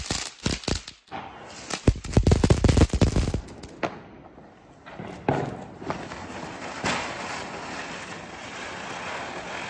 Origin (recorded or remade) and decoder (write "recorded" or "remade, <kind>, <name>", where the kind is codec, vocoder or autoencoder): recorded